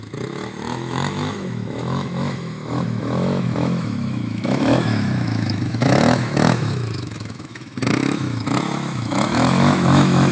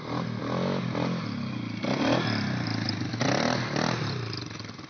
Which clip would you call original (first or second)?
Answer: second